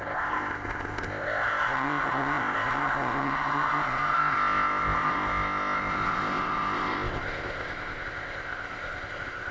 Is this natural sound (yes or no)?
no